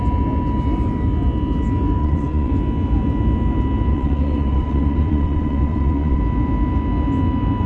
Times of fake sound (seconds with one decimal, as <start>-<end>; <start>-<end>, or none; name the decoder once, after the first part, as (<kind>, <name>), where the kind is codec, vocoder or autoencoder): 2.0-2.5 (vocoder, WaveNeXt); 3.9-6.2